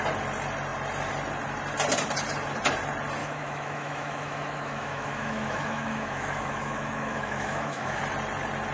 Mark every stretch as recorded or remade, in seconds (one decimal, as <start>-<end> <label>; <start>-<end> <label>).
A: 0.0-3.2 recorded; 3.2-8.0 remade; 8.0-8.7 recorded